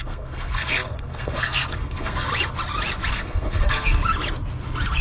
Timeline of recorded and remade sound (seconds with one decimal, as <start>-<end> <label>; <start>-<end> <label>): 0.0-2.3 remade; 2.3-3.1 recorded; 3.1-4.0 remade; 4.0-5.0 recorded